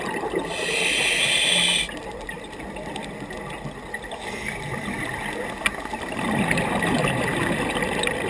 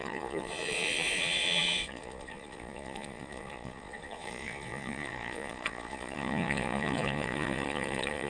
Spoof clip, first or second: second